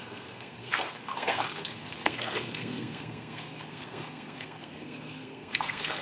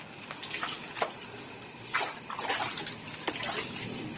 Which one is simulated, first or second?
first